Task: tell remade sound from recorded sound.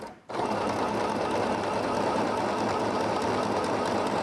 recorded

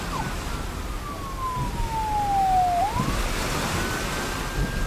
recorded